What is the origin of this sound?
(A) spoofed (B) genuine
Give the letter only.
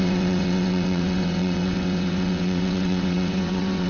A